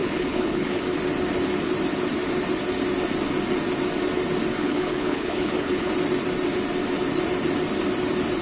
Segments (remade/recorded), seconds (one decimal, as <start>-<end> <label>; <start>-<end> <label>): 0.0-0.8 remade; 0.8-4.6 recorded; 4.6-5.9 remade; 5.9-8.4 recorded